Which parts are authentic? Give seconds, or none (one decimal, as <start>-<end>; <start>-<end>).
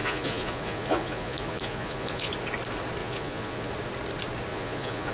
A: 2.3-3.0; 3.7-4.5